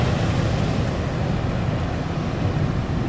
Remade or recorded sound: recorded